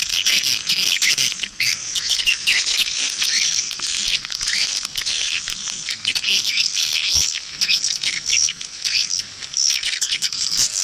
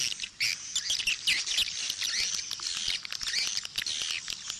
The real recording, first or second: second